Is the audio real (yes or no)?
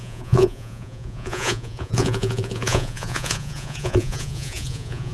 no